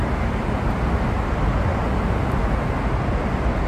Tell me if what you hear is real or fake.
real